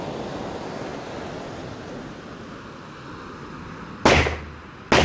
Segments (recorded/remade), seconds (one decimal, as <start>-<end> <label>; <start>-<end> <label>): 0.0-5.0 recorded